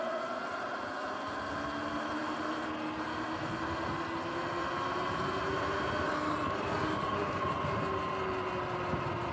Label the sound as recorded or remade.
recorded